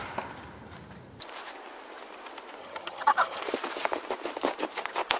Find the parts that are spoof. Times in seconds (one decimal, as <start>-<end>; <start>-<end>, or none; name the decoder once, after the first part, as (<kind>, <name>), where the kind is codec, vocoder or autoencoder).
2.6-3.4 (vocoder, HiFi-GAN)